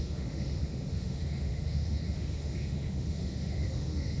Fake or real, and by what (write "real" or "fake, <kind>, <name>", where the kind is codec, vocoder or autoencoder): fake, autoencoder, DAC-VAE